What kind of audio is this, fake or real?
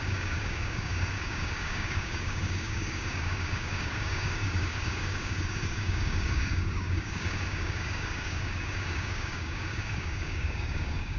fake